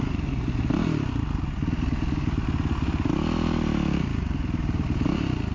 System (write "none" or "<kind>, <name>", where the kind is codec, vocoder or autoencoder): none